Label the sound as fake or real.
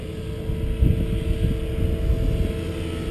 real